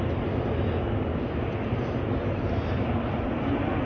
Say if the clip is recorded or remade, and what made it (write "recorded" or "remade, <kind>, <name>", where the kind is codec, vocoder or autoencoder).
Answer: recorded